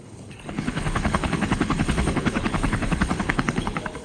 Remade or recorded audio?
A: remade